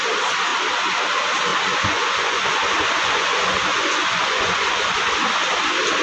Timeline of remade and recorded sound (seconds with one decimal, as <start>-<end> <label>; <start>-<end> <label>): 0.0-1.5 recorded; 1.5-5.1 remade; 5.1-6.0 recorded